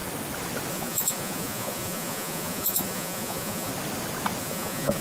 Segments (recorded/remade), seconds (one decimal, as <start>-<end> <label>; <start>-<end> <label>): 0.0-0.7 recorded; 0.7-3.7 remade; 3.7-4.4 recorded; 4.4-5.0 remade

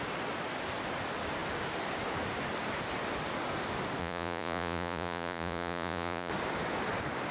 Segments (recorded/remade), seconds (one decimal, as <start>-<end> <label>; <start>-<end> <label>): 0.0-4.0 recorded; 4.0-6.3 remade; 6.3-7.3 recorded

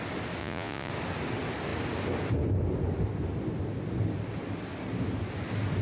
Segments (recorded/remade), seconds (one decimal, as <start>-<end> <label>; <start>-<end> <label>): 0.0-0.4 recorded; 0.4-0.9 remade; 0.9-5.8 recorded

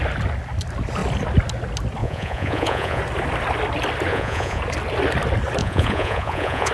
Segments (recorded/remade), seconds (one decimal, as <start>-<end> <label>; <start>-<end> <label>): 0.0-2.0 recorded; 2.0-3.0 remade; 3.0-4.1 recorded; 4.1-4.6 remade; 4.6-5.6 recorded; 5.6-6.7 remade

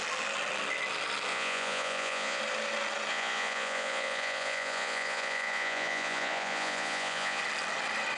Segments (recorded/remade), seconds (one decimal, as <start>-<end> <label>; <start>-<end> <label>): 0.0-1.3 recorded; 1.3-2.4 remade; 2.4-3.1 recorded; 3.1-7.4 remade; 7.4-8.2 recorded

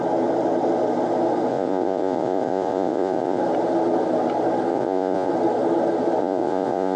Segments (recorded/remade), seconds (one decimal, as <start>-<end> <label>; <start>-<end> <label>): 0.0-1.5 recorded; 1.5-3.4 remade; 3.4-4.7 recorded; 4.7-5.3 remade; 5.3-6.2 recorded; 6.2-7.0 remade

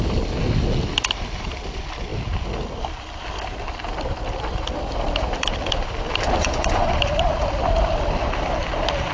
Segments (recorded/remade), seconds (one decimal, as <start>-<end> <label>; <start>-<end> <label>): 0.0-6.4 recorded; 6.4-7.0 remade; 7.0-9.1 recorded

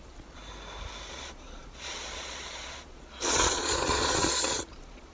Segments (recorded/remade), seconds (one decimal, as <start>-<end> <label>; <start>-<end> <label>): 0.0-0.4 remade; 0.4-1.1 recorded; 1.1-5.1 remade